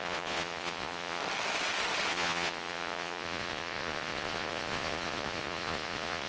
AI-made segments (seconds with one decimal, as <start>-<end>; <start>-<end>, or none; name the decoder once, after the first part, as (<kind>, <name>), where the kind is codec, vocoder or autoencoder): 0.0-1.2 (vocoder, Vocos); 2.1-6.3